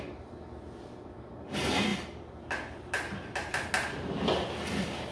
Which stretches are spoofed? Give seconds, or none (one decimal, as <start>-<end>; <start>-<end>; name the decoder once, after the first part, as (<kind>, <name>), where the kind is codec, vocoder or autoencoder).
none